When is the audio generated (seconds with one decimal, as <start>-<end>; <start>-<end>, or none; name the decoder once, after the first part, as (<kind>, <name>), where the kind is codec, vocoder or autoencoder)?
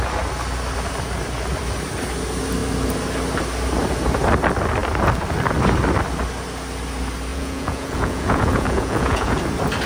7.3-9.4 (vocoder, Vocos)